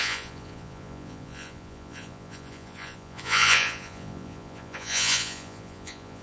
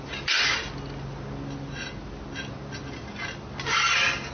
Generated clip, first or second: first